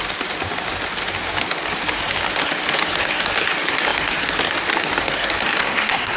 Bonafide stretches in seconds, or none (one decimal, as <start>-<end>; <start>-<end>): 0.0-5.6